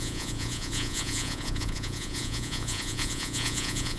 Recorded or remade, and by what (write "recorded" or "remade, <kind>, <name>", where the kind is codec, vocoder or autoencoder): remade, vocoder, Vocos